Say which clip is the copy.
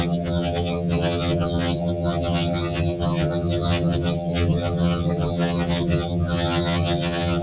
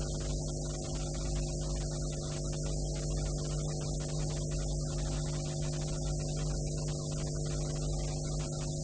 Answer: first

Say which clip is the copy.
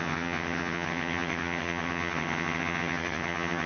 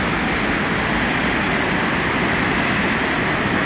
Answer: first